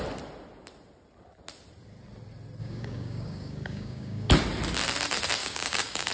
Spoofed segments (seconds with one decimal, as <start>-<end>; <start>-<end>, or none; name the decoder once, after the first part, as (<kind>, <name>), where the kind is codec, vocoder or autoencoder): 2.6-4.3 (codec, DAC); 5.4-6.1